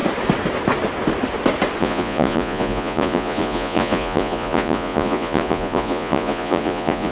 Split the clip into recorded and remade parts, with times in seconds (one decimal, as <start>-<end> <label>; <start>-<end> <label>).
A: 0.0-1.8 recorded; 1.8-7.1 remade